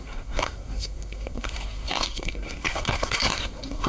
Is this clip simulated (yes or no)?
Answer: yes